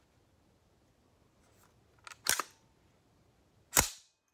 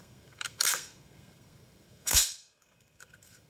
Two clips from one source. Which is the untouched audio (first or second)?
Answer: first